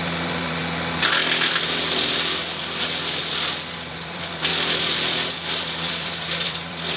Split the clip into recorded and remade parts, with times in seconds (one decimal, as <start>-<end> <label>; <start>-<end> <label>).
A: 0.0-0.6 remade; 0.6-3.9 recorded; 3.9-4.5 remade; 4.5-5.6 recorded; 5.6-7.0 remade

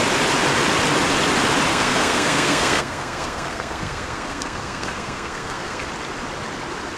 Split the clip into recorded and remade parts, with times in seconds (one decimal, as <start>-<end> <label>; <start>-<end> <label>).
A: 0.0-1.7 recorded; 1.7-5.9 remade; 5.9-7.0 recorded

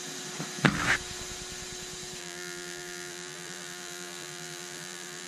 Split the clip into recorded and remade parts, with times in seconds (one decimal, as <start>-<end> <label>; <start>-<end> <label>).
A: 0.0-2.2 recorded; 2.2-5.3 remade

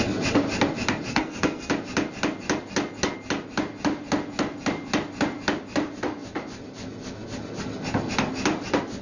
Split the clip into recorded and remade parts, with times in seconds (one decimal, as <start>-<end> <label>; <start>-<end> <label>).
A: 0.0-1.1 recorded; 1.1-1.7 remade; 1.7-9.0 recorded

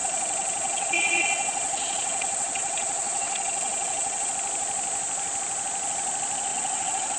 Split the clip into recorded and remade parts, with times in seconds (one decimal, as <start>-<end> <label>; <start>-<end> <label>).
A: 0.0-4.3 remade; 4.3-6.5 recorded; 6.5-7.2 remade

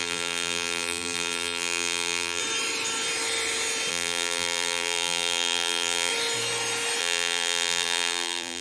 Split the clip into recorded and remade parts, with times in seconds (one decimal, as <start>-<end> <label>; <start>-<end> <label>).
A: 0.0-2.4 remade; 2.4-3.9 recorded; 3.9-6.1 remade; 6.1-7.0 recorded; 7.0-8.6 remade